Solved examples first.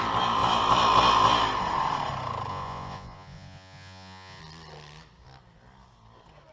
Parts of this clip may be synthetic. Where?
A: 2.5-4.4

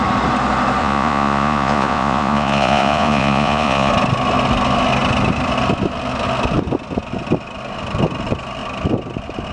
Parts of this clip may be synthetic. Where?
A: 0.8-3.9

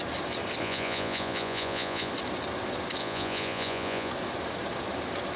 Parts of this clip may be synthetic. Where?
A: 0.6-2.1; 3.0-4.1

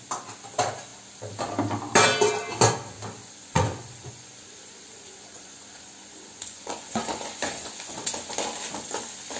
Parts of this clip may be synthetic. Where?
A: 3.2-8.3

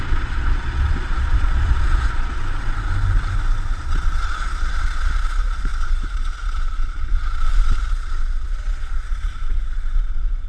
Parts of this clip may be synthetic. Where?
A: 0.0-2.4; 3.8-10.5

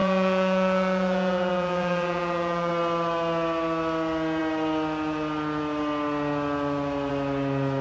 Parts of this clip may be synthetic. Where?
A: 0.0-2.7

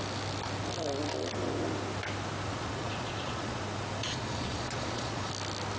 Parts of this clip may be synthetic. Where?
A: 2.5-3.6; 4.0-5.3